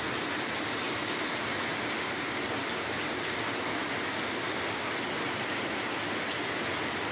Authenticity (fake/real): real